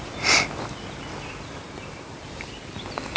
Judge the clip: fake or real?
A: real